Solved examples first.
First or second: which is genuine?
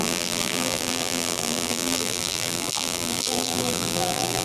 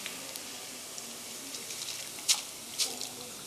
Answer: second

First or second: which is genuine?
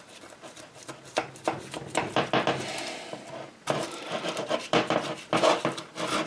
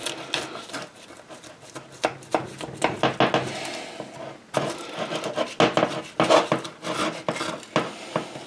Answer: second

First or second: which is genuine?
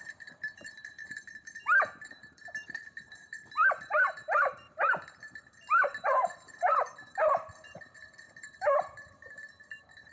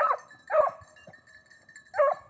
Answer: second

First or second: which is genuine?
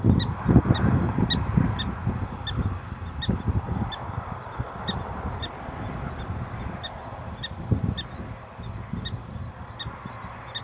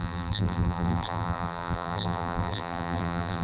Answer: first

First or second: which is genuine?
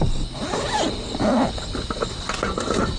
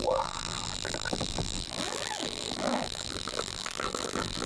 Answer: first